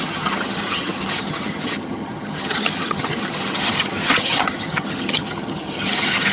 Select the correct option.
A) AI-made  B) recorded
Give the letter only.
A